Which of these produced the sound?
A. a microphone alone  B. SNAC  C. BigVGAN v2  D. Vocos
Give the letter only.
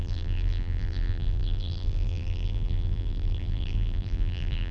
C